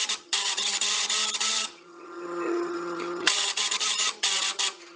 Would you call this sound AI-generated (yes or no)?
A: yes